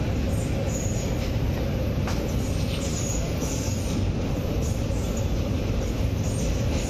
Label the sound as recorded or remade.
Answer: recorded